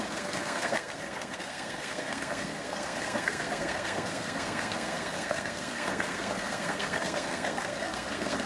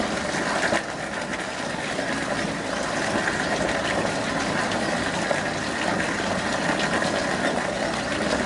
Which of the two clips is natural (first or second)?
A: second